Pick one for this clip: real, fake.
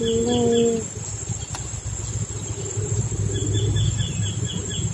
real